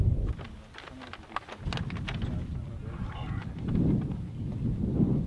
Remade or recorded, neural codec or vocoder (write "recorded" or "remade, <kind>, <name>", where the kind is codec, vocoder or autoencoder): recorded